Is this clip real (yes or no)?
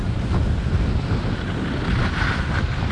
yes